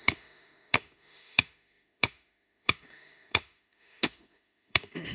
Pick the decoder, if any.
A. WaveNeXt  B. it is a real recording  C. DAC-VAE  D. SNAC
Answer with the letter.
C